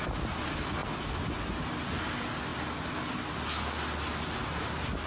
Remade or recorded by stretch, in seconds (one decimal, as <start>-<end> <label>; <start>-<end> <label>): 0.0-5.1 recorded